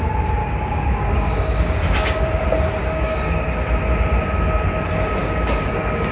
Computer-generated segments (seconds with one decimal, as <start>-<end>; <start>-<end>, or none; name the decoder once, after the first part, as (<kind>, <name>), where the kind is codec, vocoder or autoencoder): 0.4-2.4 (codec, DAC); 2.8-3.5; 5.2-6.1